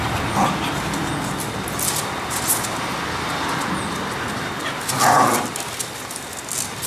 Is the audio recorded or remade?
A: recorded